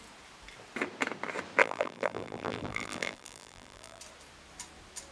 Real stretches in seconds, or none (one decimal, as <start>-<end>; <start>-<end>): 0.0-1.6; 4.0-5.1